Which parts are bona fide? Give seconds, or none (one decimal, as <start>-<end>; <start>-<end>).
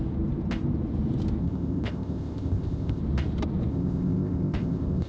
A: 0.0-1.4; 3.0-3.7